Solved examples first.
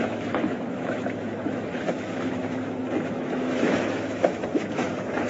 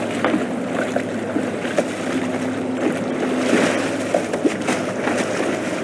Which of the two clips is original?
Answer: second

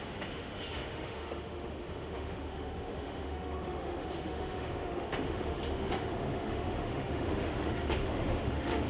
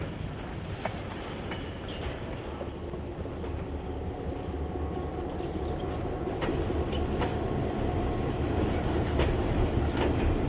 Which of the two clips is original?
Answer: second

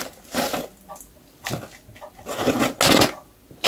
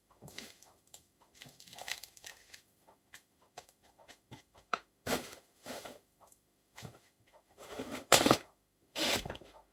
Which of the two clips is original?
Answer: first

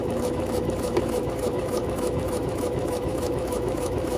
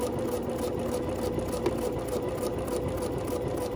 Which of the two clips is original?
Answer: second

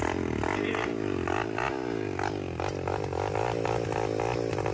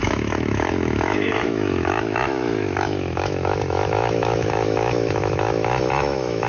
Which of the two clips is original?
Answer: first